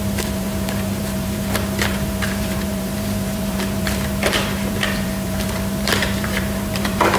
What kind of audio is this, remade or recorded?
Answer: remade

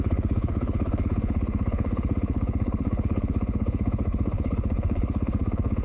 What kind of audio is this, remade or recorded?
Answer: remade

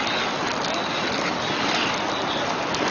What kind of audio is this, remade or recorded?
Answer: recorded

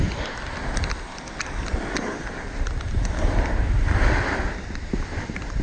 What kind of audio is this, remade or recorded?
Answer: recorded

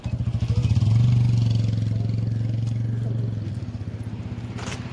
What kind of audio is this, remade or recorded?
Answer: recorded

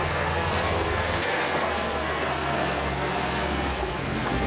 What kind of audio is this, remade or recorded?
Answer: remade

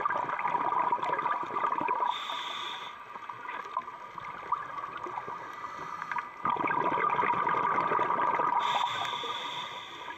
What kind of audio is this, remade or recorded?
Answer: remade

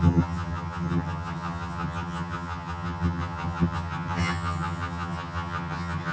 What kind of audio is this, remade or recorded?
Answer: remade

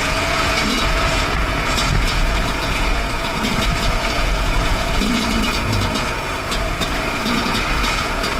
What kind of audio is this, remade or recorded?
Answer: remade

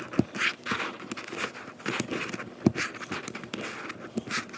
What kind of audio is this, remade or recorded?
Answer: recorded